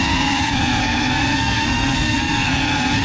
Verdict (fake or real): fake